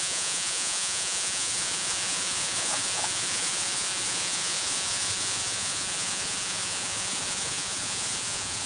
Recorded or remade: remade